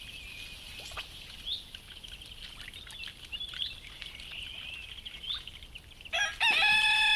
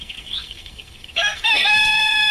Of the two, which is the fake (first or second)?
second